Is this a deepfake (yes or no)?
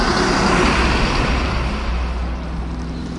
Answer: no